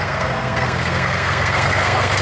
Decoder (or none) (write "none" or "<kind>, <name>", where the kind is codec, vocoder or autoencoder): codec, SNAC